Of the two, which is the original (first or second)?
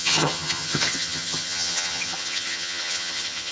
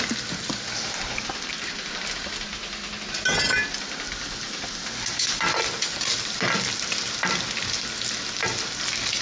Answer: second